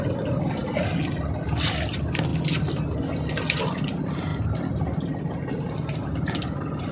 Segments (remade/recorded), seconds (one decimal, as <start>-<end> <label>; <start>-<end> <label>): 0.0-6.9 recorded